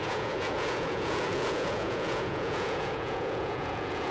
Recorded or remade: remade